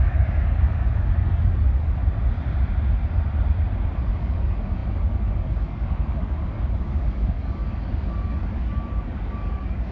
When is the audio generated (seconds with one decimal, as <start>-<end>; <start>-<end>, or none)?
0.0-2.0; 4.1-9.9